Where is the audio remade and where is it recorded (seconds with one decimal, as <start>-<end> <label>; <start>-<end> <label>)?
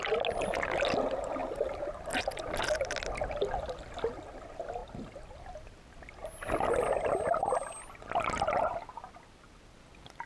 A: 0.0-1.4 recorded; 1.4-3.6 remade; 3.6-10.3 recorded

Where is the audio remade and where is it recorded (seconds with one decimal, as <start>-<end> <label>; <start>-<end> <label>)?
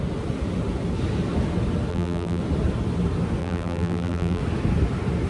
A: 0.0-1.9 recorded; 1.9-2.4 remade; 2.4-3.4 recorded; 3.4-4.4 remade; 4.4-5.3 recorded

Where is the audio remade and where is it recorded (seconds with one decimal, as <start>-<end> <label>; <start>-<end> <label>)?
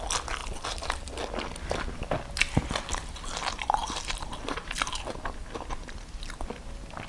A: 0.0-0.4 recorded; 0.4-1.2 remade; 1.2-3.8 recorded; 3.8-5.0 remade; 5.0-7.1 recorded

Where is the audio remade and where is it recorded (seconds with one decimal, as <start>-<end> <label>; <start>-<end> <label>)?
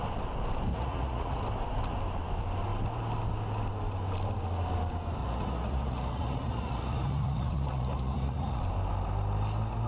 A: 0.0-0.7 recorded; 0.7-1.4 remade; 1.4-5.2 recorded; 5.2-8.6 remade; 8.6-9.9 recorded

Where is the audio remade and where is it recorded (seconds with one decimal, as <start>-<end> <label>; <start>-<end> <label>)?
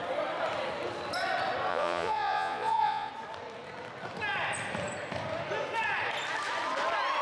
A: 0.0-1.7 recorded; 1.7-3.1 remade; 3.1-7.2 recorded